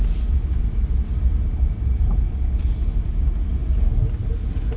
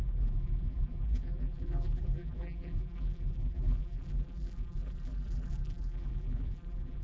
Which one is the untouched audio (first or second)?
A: first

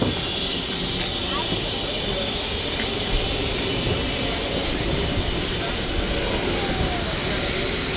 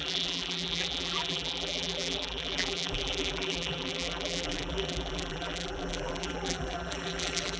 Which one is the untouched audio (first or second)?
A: first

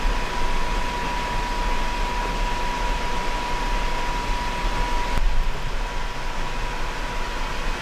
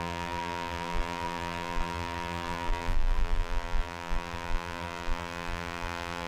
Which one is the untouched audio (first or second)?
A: first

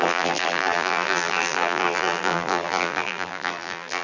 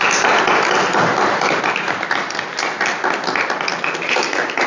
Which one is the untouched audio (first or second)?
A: second